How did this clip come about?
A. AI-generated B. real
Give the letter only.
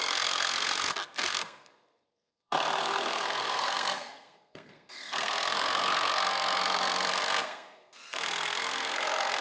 A